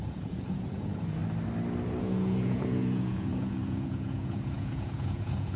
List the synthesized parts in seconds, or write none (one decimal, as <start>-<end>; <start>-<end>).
0.0-1.2; 2.0-5.6